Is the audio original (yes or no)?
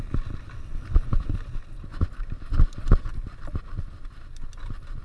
yes